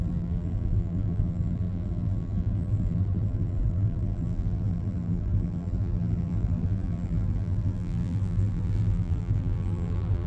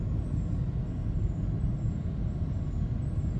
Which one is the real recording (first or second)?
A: second